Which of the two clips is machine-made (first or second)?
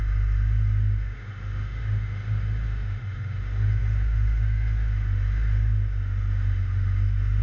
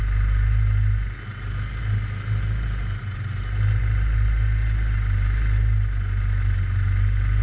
first